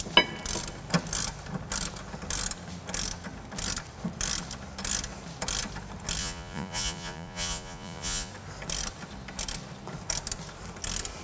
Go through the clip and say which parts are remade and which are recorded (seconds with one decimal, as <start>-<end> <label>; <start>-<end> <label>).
0.0-6.2 recorded; 6.2-8.3 remade; 8.3-11.2 recorded